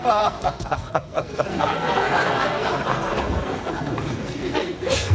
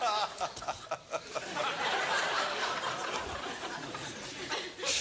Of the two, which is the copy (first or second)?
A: first